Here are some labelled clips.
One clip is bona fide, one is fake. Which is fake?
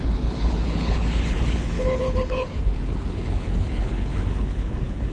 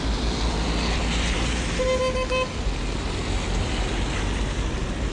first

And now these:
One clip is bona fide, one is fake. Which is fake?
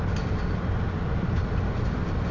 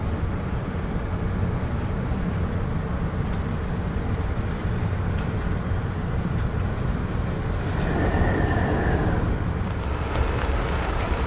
second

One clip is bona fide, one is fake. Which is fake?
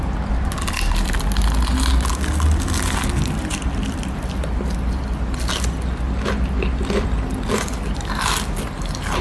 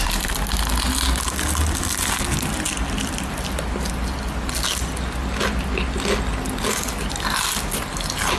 first